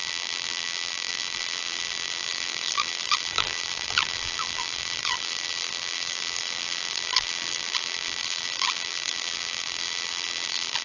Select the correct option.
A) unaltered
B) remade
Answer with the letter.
B